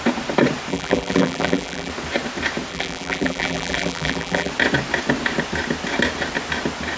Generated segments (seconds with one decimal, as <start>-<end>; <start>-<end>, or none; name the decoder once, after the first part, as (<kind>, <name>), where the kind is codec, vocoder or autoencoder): 0.7-1.9 (vocoder, BigVGAN v2); 2.7-4.5